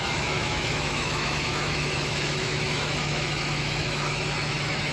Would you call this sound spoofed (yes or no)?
yes